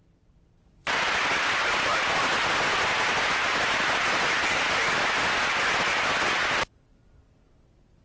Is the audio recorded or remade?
recorded